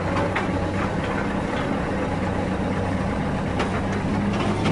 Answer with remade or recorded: recorded